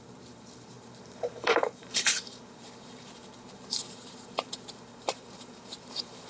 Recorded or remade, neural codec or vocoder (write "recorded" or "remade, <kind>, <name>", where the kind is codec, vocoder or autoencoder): remade, vocoder, BigVGAN v2